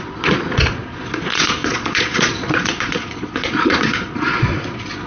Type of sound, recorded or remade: remade